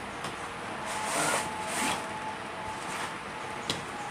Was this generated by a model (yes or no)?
no